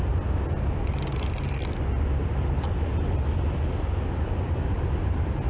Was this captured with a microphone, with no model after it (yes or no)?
yes